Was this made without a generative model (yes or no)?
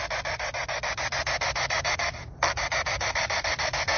yes